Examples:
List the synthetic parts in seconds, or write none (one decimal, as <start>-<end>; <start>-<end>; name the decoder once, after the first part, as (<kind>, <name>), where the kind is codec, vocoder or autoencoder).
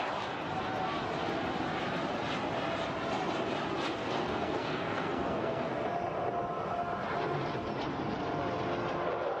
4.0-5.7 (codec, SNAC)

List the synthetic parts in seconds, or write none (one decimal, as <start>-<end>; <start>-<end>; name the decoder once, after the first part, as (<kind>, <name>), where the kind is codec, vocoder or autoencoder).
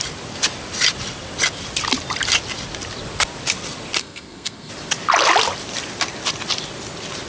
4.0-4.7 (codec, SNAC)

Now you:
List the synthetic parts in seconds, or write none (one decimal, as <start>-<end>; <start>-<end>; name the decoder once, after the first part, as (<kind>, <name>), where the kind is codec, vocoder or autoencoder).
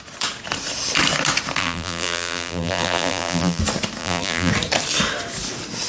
1.6-3.6 (vocoder, BigVGAN v2); 4.0-4.5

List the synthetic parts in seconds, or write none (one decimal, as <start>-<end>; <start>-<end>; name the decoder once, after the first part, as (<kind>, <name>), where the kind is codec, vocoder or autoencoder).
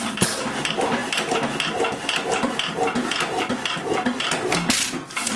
none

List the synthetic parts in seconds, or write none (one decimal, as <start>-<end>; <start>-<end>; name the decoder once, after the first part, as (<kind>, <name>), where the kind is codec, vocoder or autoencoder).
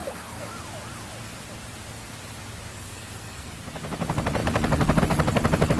0.0-0.5 (codec, SNAC); 2.7-3.5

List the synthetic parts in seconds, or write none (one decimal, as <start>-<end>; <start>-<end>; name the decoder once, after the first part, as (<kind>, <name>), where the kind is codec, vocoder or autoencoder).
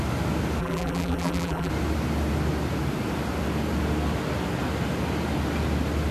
0.6-1.7 (vocoder, BigVGAN v2)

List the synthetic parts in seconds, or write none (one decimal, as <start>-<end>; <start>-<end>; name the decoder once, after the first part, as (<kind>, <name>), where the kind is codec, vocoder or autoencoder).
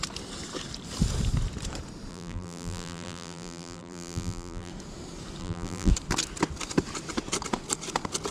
2.1-4.7 (vocoder, BigVGAN v2); 5.4-5.9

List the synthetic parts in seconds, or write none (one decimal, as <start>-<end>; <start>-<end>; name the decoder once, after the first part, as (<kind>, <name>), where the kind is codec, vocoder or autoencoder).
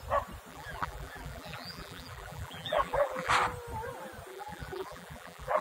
0.5-3.3 (vocoder, BigVGAN v2); 4.3-5.6